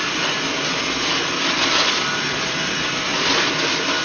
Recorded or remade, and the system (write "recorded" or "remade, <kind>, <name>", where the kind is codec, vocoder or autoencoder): recorded